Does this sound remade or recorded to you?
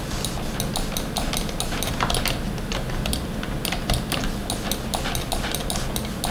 recorded